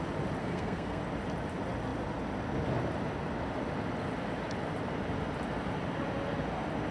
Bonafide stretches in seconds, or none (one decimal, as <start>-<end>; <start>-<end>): 0.0-0.4; 1.0-6.9